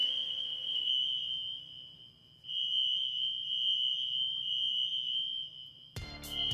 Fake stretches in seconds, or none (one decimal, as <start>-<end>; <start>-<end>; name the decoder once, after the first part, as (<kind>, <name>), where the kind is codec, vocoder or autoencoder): 0.0-0.9 (codec, SNAC)